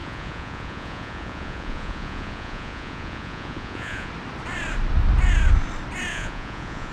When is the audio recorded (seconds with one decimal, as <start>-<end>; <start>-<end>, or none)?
4.1-6.1